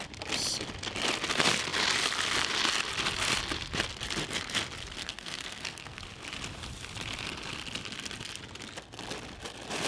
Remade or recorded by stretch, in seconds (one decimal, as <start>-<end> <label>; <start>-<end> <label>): 0.0-5.0 recorded; 5.0-6.0 remade; 6.0-9.9 recorded